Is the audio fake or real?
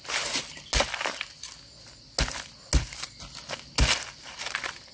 real